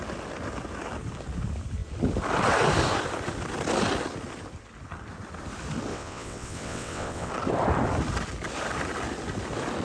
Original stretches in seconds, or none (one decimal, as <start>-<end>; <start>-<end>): 0.0-5.9; 7.3-9.8